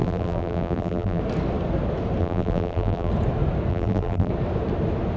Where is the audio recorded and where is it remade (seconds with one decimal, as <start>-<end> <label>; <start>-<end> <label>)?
0.0-1.2 remade; 1.2-2.2 recorded; 2.2-3.1 remade; 3.1-3.7 recorded; 3.7-4.3 remade; 4.3-5.2 recorded